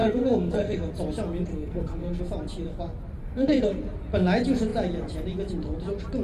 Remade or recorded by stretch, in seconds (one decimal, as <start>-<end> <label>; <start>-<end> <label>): 0.0-0.9 remade; 0.9-1.5 recorded; 1.5-2.2 remade; 2.2-3.2 recorded; 3.2-3.8 remade; 3.8-6.2 recorded